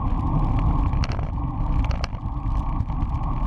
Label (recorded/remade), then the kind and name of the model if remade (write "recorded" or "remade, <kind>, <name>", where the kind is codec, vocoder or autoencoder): recorded